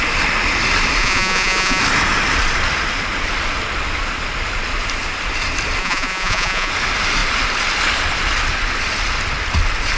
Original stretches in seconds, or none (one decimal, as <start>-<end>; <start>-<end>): 0.0-1.0; 1.8-5.8; 6.7-10.0